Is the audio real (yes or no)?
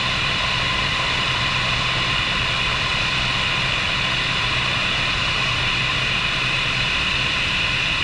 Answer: no